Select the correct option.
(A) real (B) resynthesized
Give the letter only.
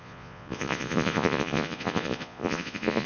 B